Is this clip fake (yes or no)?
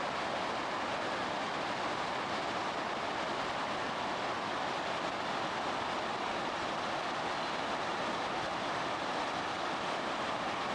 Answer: no